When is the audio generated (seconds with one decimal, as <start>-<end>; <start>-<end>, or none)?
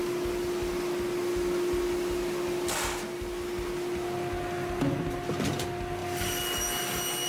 none